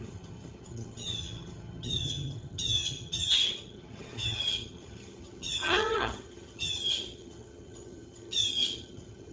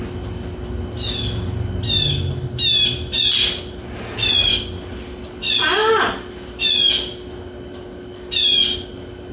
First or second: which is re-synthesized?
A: first